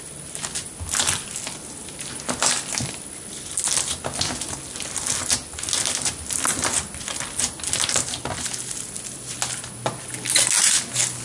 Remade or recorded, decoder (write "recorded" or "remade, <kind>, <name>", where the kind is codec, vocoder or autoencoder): recorded